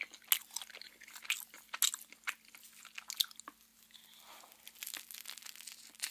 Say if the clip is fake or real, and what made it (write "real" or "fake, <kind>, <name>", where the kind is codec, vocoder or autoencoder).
real